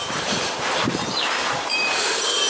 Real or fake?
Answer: fake